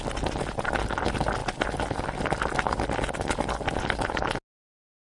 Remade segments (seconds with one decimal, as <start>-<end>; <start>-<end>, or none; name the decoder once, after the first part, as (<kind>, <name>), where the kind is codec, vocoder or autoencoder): none